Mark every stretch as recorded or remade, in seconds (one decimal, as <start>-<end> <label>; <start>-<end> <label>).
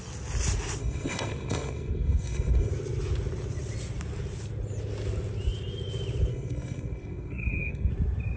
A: 0.0-0.8 recorded; 0.8-2.7 remade; 2.7-6.3 recorded; 6.3-7.9 remade; 7.9-8.4 recorded